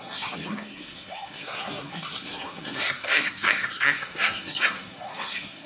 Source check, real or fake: fake